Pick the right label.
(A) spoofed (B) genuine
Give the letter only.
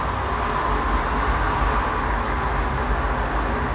B